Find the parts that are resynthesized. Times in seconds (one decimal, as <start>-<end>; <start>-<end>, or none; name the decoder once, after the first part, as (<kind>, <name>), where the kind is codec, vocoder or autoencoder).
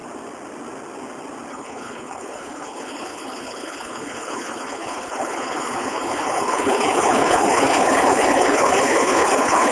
1.5-9.7 (codec, HILCodec)